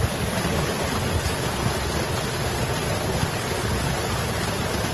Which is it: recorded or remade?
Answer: recorded